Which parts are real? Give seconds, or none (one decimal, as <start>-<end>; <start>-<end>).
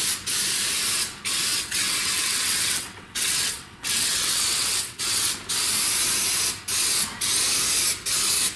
0.0-1.5; 5.3-8.6